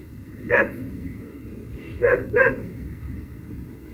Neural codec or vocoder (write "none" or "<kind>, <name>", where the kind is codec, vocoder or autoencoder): codec, SNAC